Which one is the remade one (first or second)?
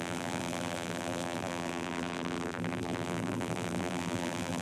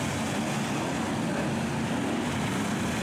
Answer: first